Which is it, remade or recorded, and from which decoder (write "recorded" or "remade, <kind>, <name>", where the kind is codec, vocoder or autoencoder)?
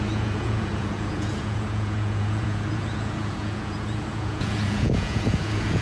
remade, vocoder, Vocos